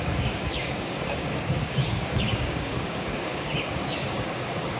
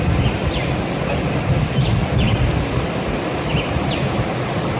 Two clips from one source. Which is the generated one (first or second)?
first